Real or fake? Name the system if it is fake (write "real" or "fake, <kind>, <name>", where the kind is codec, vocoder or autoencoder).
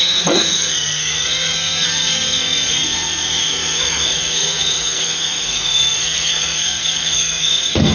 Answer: fake, codec, SNAC